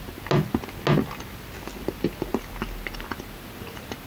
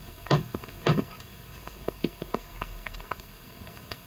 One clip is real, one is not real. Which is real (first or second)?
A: first